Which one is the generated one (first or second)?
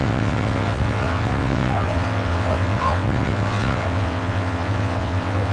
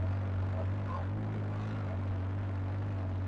first